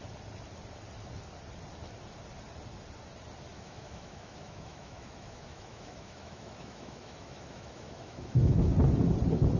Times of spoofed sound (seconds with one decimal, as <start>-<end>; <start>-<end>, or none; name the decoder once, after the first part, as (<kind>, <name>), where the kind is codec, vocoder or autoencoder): 3.5-8.7 (autoencoder, DAC-VAE)